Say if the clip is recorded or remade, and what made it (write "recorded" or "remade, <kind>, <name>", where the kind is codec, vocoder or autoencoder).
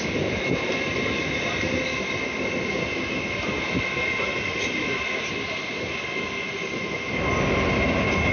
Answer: recorded